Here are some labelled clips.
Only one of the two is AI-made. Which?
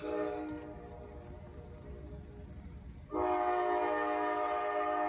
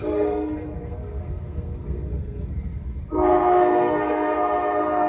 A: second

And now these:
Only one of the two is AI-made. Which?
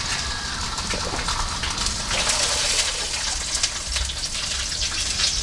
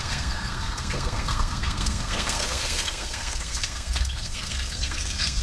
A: second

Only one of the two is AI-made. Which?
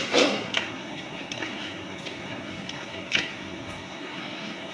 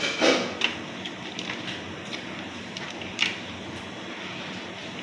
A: first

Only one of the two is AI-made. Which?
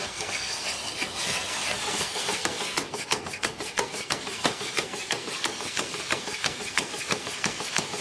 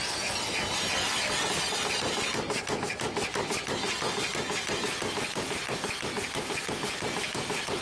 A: first